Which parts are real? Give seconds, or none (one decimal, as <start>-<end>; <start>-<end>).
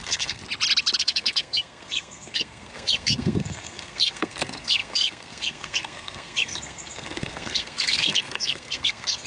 0.4-1.0